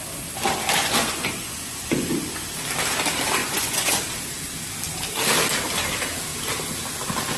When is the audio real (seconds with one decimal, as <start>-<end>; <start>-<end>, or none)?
0.0-0.8; 2.3-3.4; 4.0-7.4